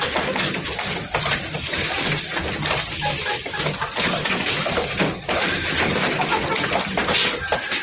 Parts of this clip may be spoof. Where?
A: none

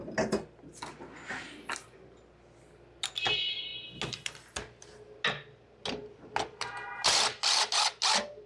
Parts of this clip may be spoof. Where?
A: none

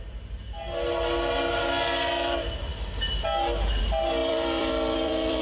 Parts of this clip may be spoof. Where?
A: 4.2-5.4 (vocoder, BigVGAN v2)

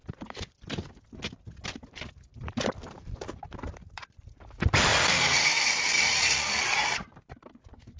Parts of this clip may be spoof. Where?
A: 0.0-1.1 (vocoder, BigVGAN v2); 2.3-4.3; 4.9-6.6

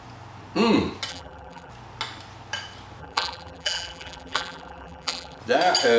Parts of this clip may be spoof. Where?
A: 1.1-1.7 (vocoder, BigVGAN v2); 3.0-5.4

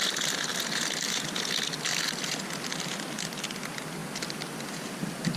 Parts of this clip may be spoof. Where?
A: none

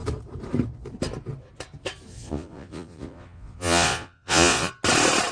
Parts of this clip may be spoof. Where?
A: 2.1-4.7 (vocoder, Vocos)

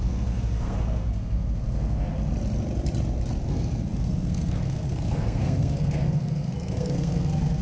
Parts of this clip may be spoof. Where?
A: 0.0-2.1 (codec, SNAC); 3.5-7.6